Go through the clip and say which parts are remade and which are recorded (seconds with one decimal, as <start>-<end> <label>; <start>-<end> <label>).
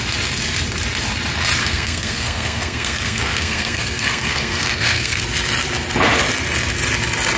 0.0-1.6 recorded; 1.6-5.2 remade; 5.2-7.4 recorded